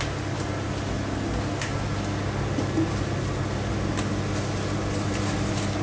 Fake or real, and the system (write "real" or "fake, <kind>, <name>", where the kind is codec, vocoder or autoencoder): real